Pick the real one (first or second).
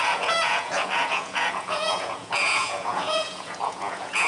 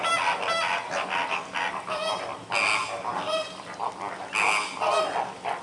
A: second